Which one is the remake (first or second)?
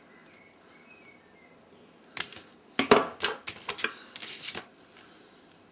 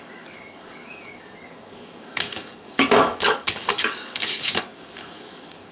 second